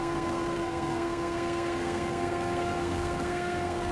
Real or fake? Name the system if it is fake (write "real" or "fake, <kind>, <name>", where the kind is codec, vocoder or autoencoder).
fake, codec, SNAC